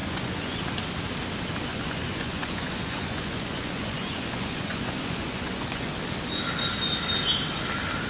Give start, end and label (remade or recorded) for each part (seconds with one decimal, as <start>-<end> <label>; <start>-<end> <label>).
0.0-0.6 remade; 0.6-1.7 recorded; 1.7-5.9 remade; 5.9-8.1 recorded